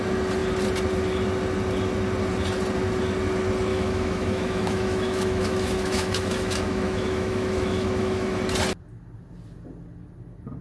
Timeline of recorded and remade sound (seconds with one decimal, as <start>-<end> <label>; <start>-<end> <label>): 0.0-3.7 recorded; 3.7-8.4 remade; 8.4-10.6 recorded